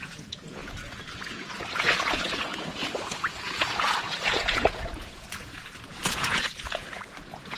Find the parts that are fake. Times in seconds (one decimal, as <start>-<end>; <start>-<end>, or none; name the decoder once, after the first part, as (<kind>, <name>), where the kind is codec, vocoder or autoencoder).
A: 0.0-7.6 (vocoder, Vocos)